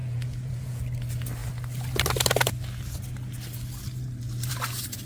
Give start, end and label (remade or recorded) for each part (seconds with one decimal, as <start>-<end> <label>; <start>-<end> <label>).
0.0-0.8 remade; 0.8-5.1 recorded